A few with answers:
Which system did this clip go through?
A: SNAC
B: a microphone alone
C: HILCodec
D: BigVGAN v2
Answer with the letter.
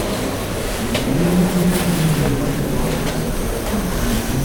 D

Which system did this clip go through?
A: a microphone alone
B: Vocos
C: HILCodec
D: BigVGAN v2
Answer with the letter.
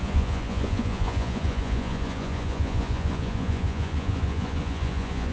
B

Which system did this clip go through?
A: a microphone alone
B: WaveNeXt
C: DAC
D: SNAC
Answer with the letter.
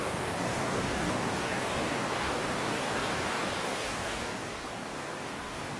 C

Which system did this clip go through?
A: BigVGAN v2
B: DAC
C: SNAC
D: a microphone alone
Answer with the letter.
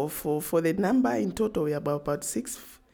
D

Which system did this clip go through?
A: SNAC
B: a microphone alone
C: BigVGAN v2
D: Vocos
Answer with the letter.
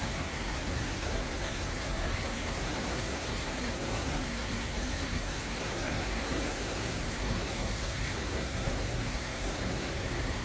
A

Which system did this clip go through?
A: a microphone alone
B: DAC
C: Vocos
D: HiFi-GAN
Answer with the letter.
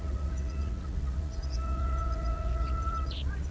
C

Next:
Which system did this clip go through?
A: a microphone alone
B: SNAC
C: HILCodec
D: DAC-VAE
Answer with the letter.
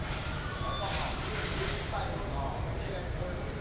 A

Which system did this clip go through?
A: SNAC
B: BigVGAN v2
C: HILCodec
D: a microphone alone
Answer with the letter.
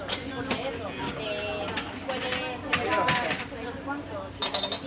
D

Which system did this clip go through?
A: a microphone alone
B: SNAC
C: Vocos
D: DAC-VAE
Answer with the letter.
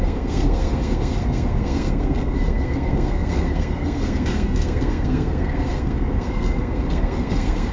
B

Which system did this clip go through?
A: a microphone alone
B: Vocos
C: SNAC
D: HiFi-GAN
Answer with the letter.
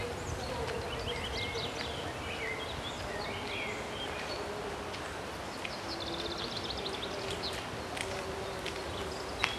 A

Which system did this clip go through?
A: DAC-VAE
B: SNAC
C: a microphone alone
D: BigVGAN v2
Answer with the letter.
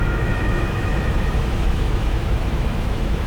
A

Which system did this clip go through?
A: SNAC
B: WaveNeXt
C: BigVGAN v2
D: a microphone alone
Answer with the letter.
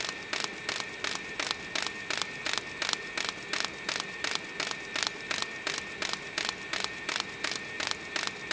D